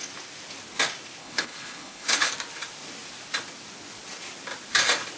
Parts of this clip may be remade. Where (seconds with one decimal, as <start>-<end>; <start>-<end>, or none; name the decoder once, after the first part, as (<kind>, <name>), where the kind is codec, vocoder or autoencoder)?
1.2-2.3 (codec, HILCodec)